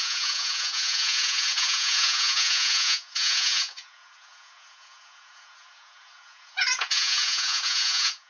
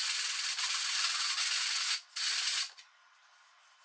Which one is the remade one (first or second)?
first